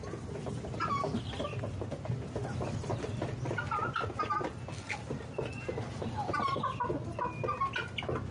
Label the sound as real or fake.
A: real